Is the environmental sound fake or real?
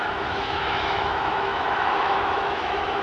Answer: fake